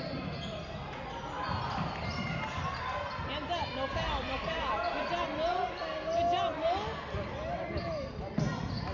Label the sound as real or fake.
real